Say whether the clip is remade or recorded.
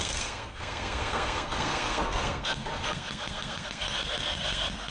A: remade